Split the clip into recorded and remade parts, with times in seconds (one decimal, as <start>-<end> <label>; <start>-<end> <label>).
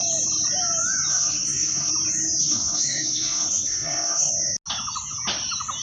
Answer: 0.0-1.1 recorded; 1.1-1.9 remade; 1.9-2.4 recorded; 2.4-4.3 remade; 4.3-5.8 recorded